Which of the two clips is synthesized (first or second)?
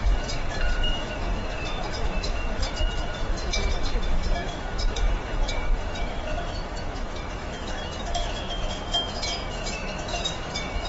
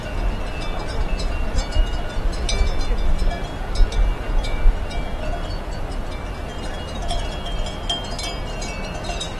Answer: first